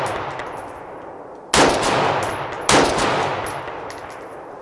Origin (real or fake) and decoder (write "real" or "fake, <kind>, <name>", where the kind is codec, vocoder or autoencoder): real